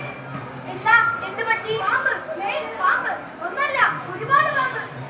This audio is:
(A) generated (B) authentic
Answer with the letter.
A